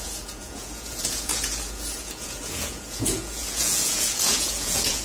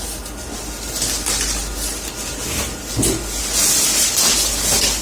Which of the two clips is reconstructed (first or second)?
first